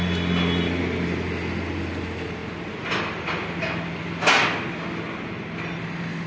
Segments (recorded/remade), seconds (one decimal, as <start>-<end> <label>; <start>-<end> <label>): 0.0-6.3 recorded